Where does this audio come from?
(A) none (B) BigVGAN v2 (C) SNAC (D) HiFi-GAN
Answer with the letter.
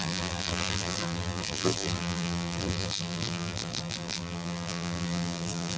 B